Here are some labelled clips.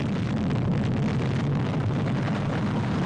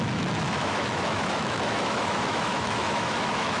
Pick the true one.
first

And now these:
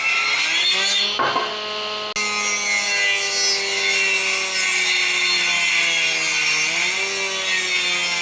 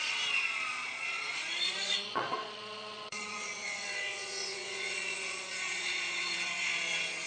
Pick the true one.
first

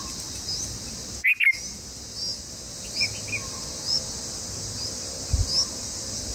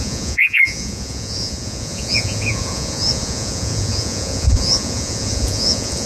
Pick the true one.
first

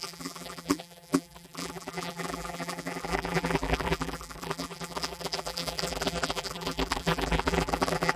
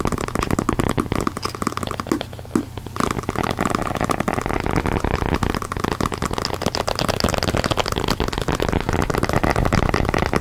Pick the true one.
second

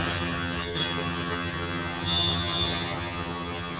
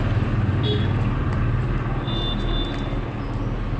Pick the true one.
second